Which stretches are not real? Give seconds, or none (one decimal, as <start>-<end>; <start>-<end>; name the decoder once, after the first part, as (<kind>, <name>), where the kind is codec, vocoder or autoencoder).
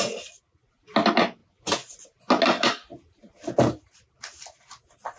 2.9-4.6 (vocoder, BigVGAN v2)